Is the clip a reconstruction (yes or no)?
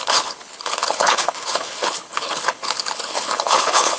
yes